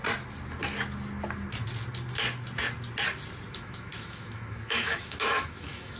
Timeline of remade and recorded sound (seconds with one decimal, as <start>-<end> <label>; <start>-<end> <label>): 0.0-3.5 recorded; 3.5-6.0 remade